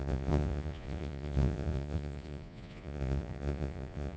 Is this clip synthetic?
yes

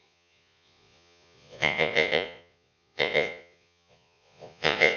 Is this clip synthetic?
yes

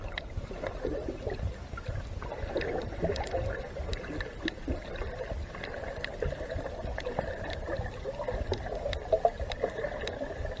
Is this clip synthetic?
no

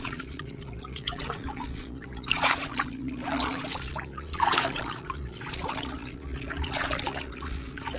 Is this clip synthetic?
yes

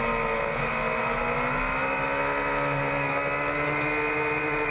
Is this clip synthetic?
no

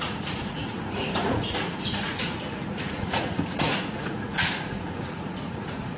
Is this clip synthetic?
yes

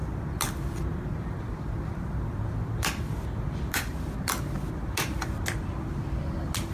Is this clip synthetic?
no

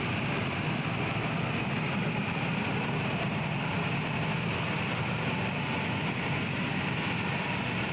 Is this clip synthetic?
no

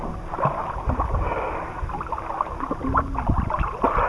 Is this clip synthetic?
no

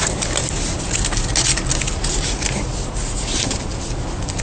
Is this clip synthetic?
no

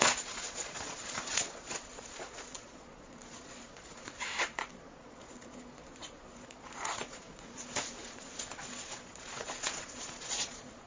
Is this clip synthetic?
yes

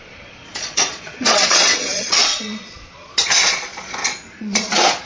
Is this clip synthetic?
yes